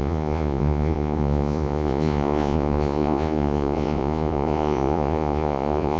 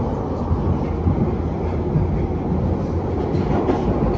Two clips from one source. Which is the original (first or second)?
second